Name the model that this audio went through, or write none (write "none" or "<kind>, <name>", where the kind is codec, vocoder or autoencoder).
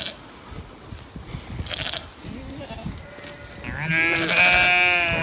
none